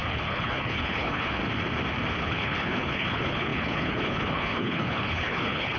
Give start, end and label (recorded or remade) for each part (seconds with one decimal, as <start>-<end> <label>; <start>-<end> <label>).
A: 0.0-1.4 remade; 1.4-2.2 recorded; 2.2-5.8 remade